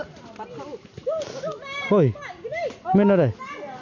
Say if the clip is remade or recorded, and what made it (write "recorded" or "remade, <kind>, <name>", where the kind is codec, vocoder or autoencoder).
recorded